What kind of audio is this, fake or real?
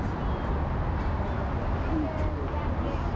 real